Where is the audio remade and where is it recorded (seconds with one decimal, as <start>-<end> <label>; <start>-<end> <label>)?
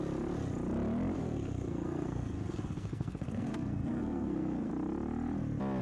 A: 0.0-1.2 recorded; 1.2-4.7 remade; 4.7-5.8 recorded